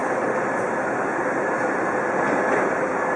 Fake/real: fake